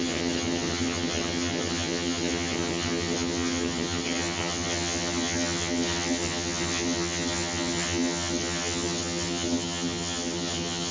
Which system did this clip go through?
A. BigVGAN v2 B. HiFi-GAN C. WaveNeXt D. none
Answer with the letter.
B